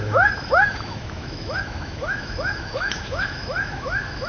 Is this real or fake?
fake